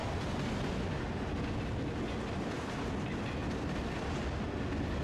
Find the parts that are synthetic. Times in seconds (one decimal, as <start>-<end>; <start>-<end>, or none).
3.4-4.1